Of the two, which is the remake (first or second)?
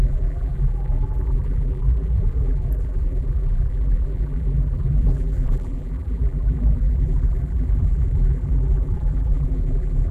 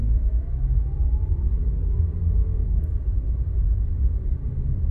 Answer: first